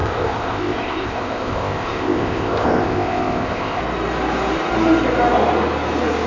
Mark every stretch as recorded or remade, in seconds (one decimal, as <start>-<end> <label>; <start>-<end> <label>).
0.0-3.8 remade; 3.8-6.3 recorded